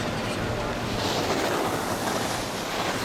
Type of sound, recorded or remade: recorded